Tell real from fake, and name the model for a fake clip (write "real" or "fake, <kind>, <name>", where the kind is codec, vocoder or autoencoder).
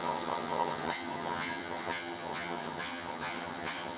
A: fake, vocoder, HiFi-GAN